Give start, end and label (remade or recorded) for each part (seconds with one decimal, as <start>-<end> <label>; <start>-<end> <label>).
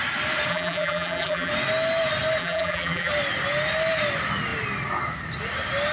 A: 0.0-0.5 recorded; 0.5-1.5 remade; 1.5-2.4 recorded; 2.4-3.1 remade; 3.1-5.9 recorded